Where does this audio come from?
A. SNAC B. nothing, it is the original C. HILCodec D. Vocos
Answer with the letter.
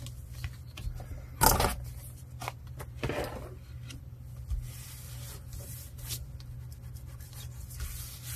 B